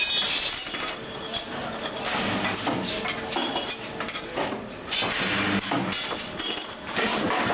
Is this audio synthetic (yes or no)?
no